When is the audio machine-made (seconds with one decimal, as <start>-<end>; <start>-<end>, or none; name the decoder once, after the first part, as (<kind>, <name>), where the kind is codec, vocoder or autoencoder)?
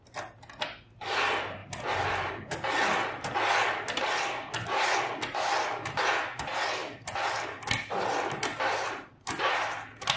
none